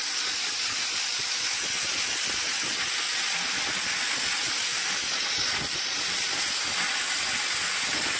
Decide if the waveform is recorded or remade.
recorded